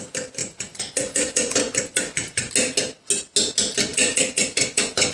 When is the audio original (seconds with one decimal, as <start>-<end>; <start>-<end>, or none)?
0.0-0.4; 2.5-3.9

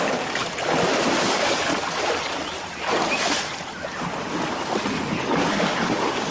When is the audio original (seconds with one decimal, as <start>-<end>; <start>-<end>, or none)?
0.4-1.2; 1.7-5.5

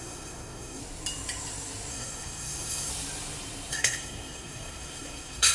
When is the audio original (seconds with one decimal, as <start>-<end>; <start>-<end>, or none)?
0.8-1.9; 2.9-3.7

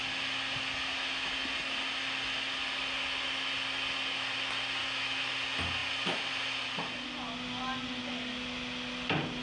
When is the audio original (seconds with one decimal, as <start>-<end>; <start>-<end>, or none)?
0.0-4.8; 5.3-9.4

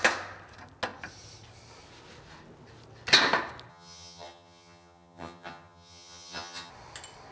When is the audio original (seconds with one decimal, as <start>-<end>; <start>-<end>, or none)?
0.0-3.7; 6.7-7.3

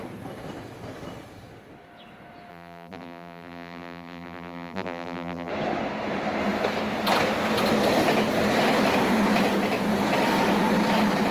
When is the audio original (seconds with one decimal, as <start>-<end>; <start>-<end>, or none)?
0.0-2.5; 5.5-11.3

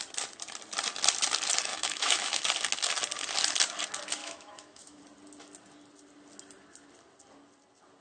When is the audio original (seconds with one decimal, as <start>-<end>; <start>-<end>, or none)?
0.0-1.7; 2.4-4.2; 5.0-8.0

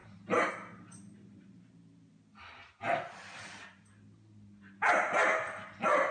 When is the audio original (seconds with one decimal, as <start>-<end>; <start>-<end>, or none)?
0.0-6.1